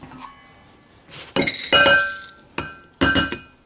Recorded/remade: recorded